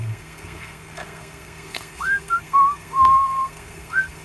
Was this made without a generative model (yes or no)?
no